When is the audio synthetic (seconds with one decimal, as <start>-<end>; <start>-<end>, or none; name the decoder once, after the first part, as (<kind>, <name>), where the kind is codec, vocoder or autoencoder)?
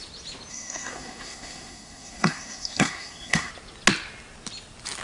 0.5-3.5 (codec, SNAC)